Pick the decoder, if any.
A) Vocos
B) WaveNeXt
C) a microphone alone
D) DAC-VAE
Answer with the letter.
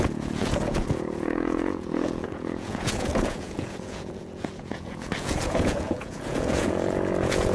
A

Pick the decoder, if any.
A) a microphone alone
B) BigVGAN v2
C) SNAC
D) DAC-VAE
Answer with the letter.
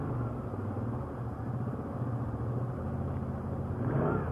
A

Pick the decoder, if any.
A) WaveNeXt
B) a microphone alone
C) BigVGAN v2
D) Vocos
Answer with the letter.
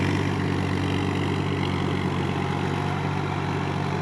B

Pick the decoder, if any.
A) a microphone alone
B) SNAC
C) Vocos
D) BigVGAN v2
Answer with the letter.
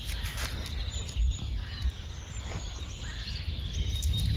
A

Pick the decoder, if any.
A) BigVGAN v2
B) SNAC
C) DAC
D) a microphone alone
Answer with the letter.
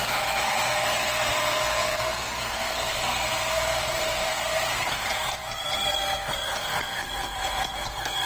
B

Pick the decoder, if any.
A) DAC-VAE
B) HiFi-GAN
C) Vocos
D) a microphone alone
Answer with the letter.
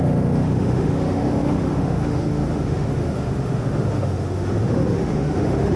A